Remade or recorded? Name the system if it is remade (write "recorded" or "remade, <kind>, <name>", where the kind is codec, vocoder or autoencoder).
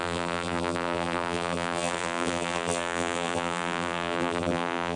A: remade, vocoder, BigVGAN v2